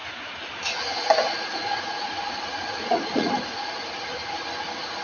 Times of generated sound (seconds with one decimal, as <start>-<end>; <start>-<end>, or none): 0.0-0.5; 1.5-4.0